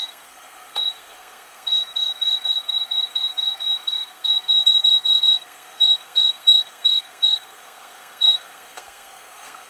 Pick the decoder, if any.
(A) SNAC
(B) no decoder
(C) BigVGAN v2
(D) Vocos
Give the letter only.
A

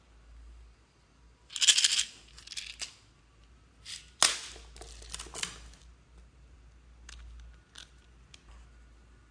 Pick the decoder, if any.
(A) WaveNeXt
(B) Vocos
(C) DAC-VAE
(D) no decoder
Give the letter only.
D